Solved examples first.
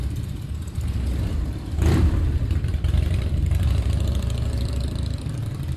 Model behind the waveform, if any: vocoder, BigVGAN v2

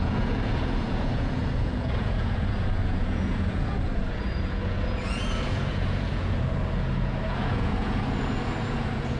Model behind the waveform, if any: vocoder, Vocos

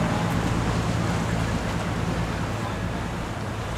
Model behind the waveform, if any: none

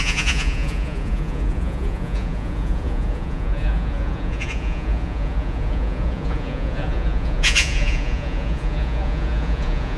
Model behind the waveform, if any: vocoder, Vocos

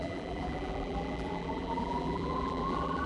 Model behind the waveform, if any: vocoder, BigVGAN v2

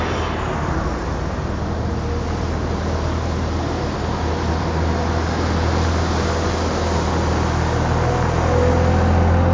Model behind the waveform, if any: none